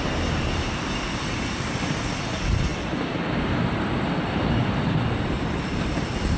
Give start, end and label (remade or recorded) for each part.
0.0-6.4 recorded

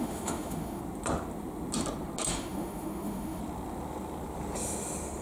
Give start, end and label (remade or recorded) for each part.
0.0-0.8 remade; 0.8-2.3 recorded; 2.3-3.4 remade; 3.4-5.2 recorded